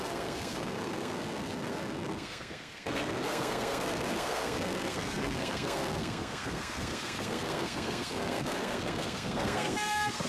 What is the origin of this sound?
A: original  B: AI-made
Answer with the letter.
B